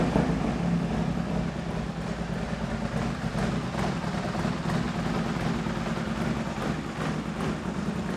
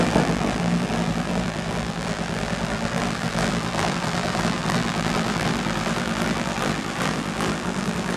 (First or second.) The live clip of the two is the first